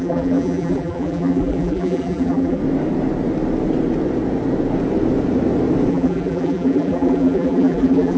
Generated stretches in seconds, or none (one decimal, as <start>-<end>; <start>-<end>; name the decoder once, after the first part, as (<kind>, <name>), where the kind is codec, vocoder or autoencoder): 0.0-2.6 (vocoder, BigVGAN v2); 5.9-8.2